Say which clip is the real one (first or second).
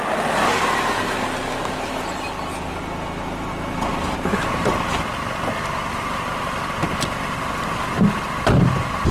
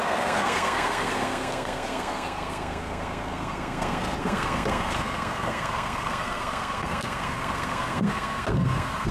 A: first